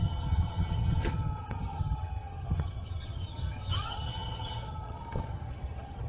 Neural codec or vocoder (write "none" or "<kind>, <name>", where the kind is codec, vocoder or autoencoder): vocoder, HiFi-GAN